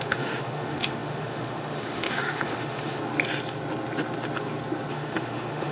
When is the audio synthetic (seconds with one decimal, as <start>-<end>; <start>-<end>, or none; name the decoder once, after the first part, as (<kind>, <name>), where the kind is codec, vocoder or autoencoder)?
0.0-3.0 (autoencoder, DAC-VAE); 4.9-5.7